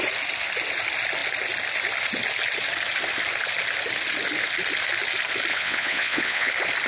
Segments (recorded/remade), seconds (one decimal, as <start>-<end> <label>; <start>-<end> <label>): 0.0-5.5 recorded; 5.5-6.5 remade; 6.5-6.9 recorded